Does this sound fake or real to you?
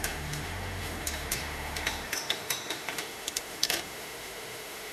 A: fake